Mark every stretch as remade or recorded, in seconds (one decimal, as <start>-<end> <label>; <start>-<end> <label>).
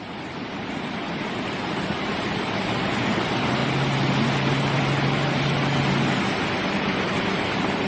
0.0-3.6 remade; 3.6-6.7 recorded; 6.7-7.9 remade